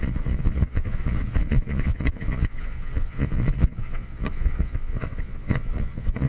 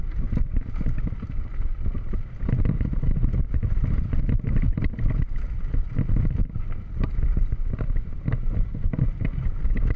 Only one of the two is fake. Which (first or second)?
first